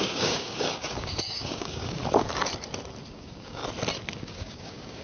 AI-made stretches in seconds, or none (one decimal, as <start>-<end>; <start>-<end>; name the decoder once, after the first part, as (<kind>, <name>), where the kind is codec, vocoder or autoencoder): 0.0-2.0 (codec, DAC); 3.1-3.6; 4.2-5.0